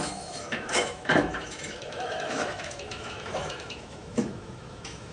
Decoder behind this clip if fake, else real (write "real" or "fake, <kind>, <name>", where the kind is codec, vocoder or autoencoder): fake, autoencoder, DAC-VAE